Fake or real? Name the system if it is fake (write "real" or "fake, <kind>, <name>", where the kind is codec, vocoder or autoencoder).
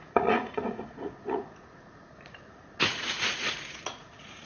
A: fake, vocoder, Vocos